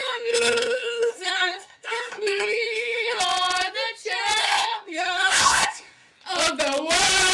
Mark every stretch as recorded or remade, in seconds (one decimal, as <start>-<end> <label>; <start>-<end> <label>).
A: 0.0-3.2 remade; 3.2-4.4 recorded; 4.4-6.1 remade; 6.1-7.3 recorded